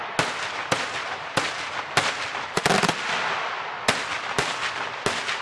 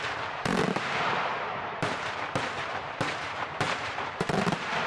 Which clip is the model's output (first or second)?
second